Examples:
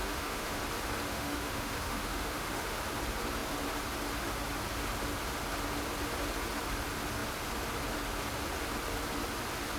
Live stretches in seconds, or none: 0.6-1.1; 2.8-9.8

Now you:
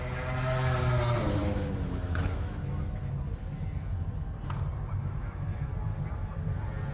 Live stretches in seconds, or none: 0.0-1.4; 3.1-5.0; 5.7-6.9

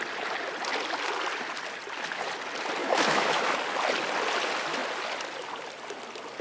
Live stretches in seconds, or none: 0.0-2.8; 3.6-6.4

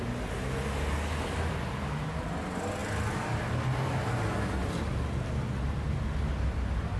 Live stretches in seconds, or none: 0.0-7.0

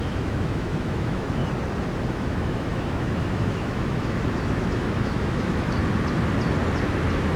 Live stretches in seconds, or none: 1.4-2.1; 5.8-7.4

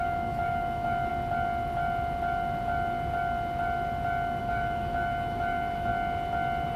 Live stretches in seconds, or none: 1.1-4.4; 5.9-6.8

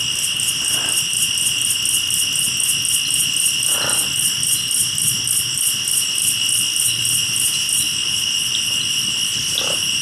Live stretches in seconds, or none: 0.0-10.0

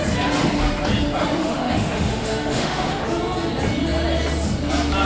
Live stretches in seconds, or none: 0.0-1.4; 3.0-5.1